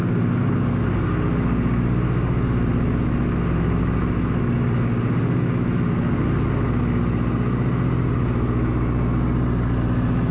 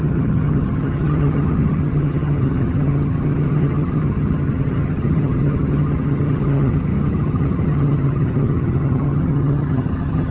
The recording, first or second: first